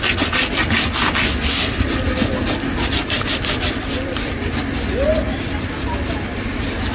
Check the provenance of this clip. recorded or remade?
recorded